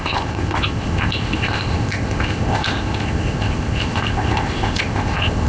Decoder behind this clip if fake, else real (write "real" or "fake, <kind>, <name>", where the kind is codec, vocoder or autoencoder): fake, codec, ZipCodec